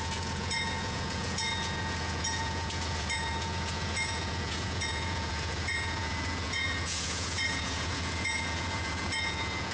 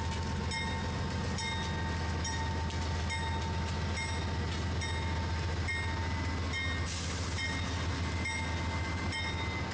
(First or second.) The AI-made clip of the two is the first